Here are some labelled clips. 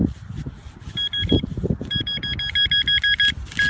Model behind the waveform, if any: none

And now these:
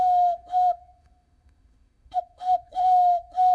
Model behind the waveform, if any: autoencoder, DAC-VAE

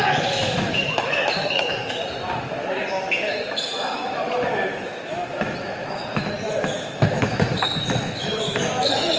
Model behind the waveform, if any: autoencoder, DAC-VAE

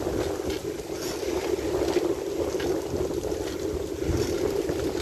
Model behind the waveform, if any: none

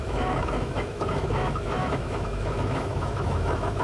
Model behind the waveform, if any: autoencoder, DAC-VAE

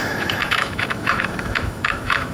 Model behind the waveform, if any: autoencoder, DAC-VAE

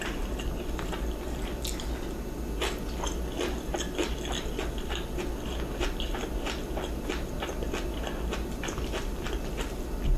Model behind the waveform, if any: none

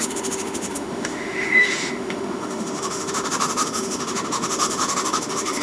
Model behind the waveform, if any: autoencoder, DAC-VAE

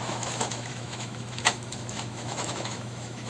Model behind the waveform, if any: autoencoder, DAC-VAE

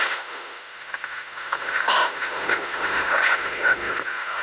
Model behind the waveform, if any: autoencoder, DAC-VAE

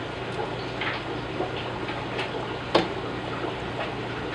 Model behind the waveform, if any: none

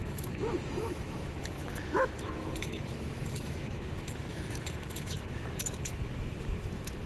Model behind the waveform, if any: autoencoder, DAC-VAE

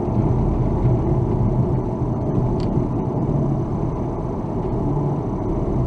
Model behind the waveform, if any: none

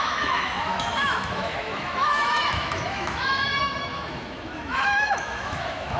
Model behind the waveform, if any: autoencoder, DAC-VAE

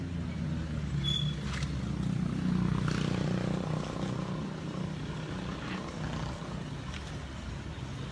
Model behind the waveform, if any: none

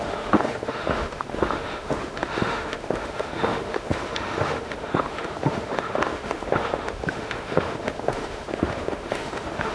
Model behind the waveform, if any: autoencoder, DAC-VAE